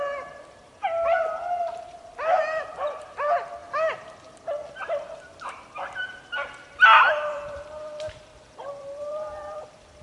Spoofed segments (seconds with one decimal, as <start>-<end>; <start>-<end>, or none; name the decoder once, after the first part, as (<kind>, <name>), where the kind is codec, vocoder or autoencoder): 0.0-3.6 (vocoder, BigVGAN v2); 6.8-8.3; 8.8-10.0